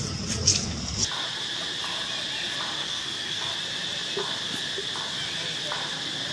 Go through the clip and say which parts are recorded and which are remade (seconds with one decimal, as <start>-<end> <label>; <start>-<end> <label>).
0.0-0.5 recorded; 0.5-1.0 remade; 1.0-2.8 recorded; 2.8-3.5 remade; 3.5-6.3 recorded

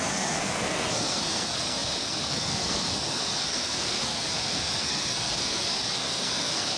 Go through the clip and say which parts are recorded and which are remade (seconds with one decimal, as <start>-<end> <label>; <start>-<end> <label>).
0.0-6.8 remade

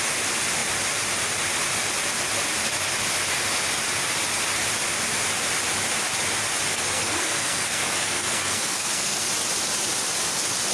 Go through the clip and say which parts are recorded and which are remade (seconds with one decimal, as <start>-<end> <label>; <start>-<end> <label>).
0.0-6.7 recorded; 6.7-9.3 remade; 9.3-10.7 recorded

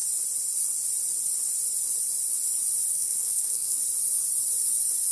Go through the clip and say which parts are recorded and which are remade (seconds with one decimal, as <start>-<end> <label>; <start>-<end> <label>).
0.0-2.9 recorded; 2.9-3.8 remade; 3.8-5.1 recorded

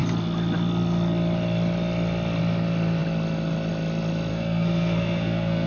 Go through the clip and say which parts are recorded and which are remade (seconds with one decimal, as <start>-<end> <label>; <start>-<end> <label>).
0.0-4.3 recorded; 4.3-5.7 remade